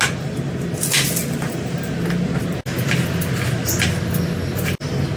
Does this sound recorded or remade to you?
recorded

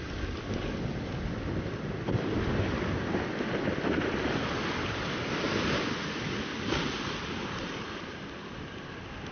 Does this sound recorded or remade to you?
recorded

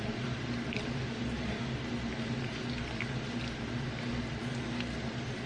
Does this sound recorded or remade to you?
recorded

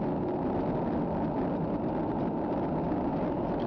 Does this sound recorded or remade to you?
recorded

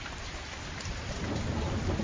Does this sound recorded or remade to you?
recorded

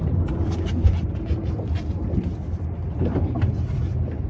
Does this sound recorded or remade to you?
recorded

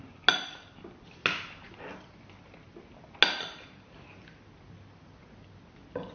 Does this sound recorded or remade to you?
recorded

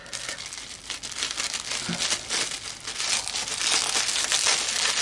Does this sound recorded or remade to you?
recorded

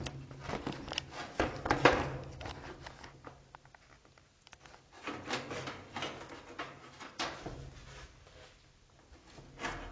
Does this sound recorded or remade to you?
recorded